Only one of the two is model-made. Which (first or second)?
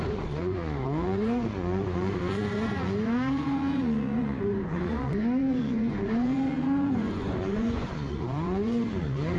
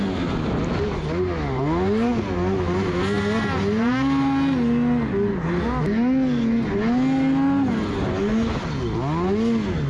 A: first